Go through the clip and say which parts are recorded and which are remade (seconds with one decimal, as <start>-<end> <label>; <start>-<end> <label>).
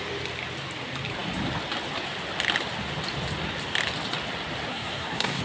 0.0-4.7 recorded; 4.7-5.4 remade